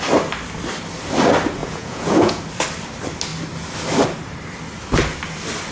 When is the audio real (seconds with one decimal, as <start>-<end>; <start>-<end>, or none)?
0.0-1.6; 2.4-5.7